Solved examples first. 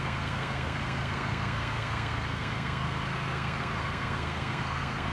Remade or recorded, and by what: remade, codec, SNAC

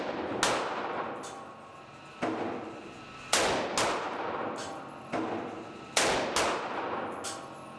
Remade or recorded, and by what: recorded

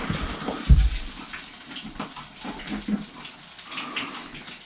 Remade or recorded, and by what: recorded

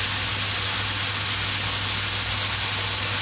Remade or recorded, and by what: recorded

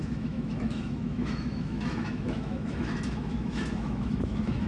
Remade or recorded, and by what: remade, autoencoder, DAC-VAE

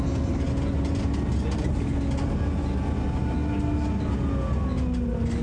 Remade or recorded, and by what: recorded